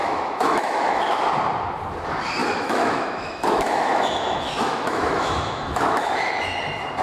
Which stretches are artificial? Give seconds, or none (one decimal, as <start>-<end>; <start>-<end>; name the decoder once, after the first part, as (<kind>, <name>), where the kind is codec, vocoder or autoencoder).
0.0-1.2 (autoencoder, DAC-VAE); 2.4-6.6